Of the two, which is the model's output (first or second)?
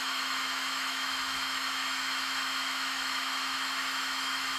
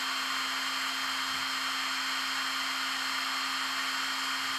first